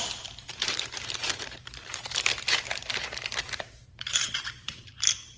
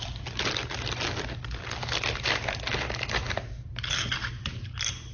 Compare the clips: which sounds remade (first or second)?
first